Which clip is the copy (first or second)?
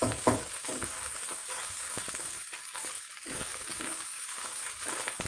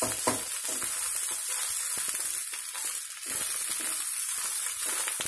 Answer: first